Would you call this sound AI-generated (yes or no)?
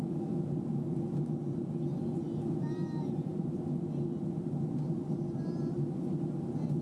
no